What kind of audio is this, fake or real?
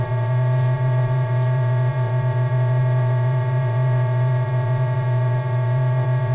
fake